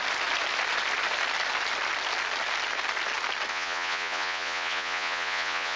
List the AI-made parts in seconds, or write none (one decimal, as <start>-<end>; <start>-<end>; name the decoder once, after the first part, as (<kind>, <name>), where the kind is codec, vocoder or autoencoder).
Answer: 3.5-5.8 (vocoder, Vocos)